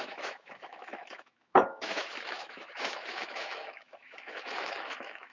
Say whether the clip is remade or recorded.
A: remade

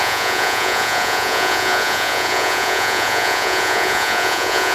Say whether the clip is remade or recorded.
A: remade